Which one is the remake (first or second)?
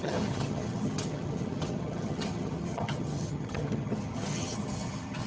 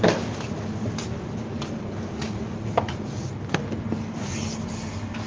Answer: first